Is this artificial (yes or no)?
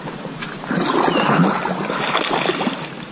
no